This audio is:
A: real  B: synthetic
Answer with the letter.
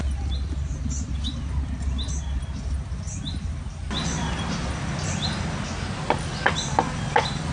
A